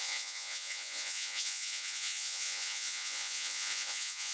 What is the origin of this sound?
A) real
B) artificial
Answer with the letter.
B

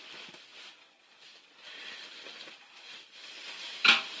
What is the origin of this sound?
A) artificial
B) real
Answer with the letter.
B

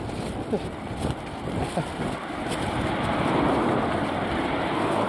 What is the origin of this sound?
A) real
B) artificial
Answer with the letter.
A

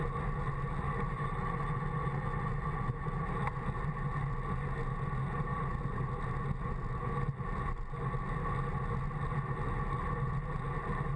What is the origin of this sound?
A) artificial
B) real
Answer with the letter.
B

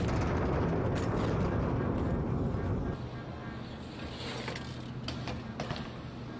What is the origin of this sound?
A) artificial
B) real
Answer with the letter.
B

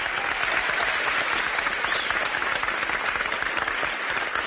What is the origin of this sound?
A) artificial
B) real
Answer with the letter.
B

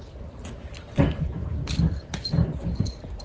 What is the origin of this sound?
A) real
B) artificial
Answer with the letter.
A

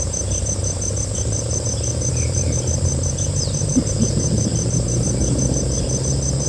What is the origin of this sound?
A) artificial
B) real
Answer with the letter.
A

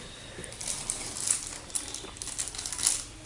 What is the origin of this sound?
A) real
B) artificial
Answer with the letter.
A